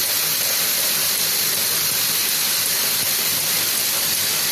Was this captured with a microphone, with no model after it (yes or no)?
no